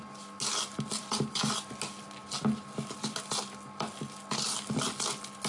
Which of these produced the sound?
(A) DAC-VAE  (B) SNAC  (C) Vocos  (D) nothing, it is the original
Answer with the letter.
D